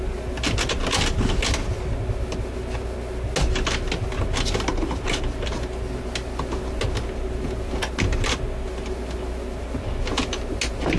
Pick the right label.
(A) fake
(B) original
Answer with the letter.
B